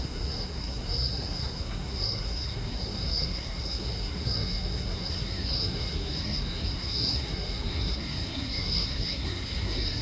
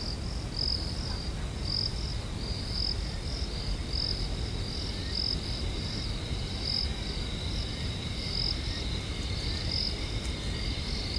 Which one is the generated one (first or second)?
first